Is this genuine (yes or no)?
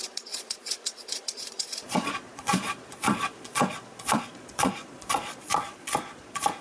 no